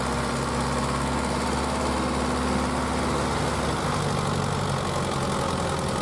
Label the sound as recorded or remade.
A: recorded